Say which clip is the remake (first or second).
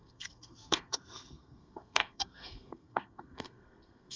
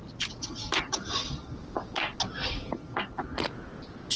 first